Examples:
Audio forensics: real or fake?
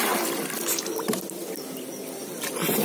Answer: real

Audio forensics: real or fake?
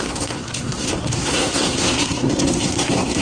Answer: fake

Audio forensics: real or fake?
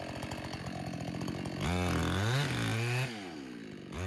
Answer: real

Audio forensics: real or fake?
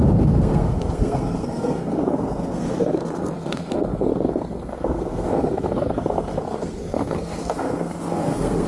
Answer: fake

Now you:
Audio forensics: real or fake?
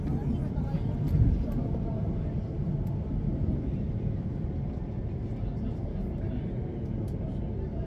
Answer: real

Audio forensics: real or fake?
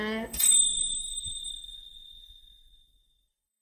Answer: fake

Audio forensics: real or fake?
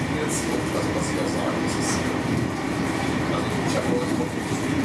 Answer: real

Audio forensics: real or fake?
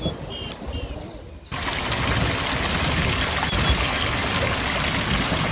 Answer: real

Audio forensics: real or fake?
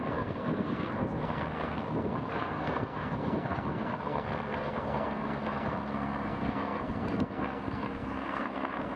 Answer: fake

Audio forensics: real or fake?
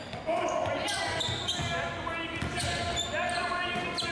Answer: real